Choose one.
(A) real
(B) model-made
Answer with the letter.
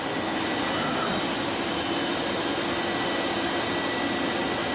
A